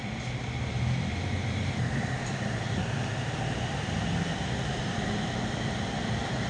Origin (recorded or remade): remade